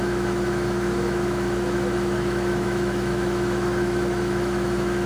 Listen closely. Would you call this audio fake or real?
fake